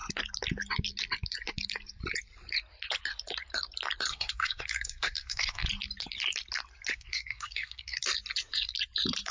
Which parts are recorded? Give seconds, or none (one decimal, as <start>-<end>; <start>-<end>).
0.0-4.1; 5.7-6.9; 8.0-9.3

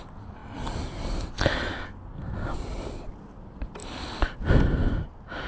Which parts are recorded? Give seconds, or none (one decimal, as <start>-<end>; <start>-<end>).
0.4-2.3; 3.8-5.1